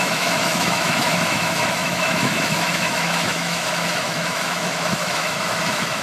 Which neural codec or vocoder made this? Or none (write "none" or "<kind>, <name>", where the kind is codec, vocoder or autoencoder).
autoencoder, DAC-VAE